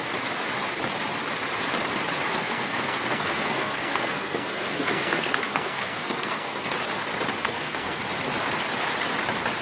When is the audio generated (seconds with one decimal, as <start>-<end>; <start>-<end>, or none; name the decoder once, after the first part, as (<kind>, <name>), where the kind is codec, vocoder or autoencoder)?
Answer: 2.4-6.7 (codec, SNAC); 7.4-8.0